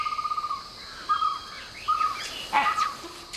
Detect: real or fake real